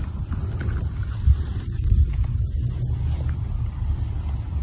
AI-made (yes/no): no